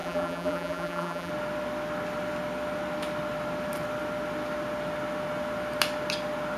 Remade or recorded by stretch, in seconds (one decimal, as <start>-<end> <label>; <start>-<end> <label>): 0.0-1.3 remade; 1.3-6.6 recorded